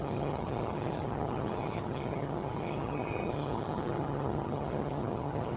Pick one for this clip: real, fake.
fake